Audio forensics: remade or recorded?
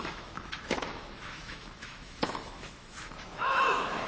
remade